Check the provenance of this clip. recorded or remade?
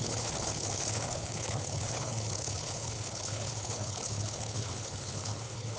remade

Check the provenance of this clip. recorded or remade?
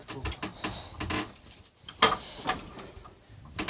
recorded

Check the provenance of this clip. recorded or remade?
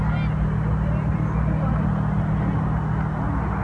recorded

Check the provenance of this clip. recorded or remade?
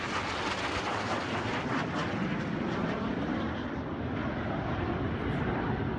recorded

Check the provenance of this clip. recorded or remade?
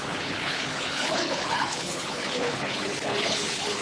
remade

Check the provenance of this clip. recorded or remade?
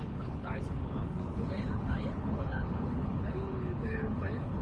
remade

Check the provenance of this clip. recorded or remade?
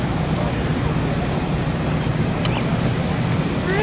recorded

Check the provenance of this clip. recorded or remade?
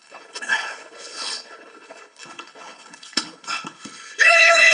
remade